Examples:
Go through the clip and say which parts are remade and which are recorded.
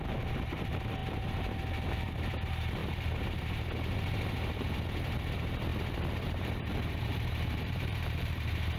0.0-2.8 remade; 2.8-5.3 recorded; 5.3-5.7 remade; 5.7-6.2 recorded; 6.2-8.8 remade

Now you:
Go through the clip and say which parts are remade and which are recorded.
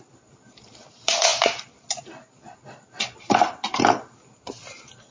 0.0-5.1 recorded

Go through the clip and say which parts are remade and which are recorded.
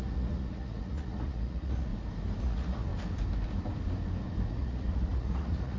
0.0-1.9 remade; 1.9-2.4 recorded; 2.4-2.9 remade; 2.9-4.5 recorded; 4.5-5.8 remade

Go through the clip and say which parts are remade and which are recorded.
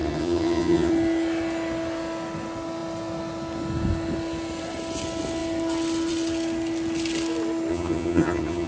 0.0-0.9 remade; 0.9-7.7 recorded; 7.7-8.7 remade